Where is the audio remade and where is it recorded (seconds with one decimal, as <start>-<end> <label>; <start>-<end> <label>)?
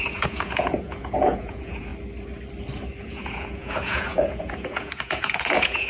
0.0-1.9 remade; 1.9-3.0 recorded; 3.0-5.9 remade